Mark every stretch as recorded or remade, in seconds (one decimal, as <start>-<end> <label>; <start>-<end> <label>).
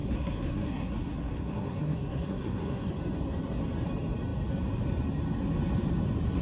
0.0-2.9 remade; 2.9-6.4 recorded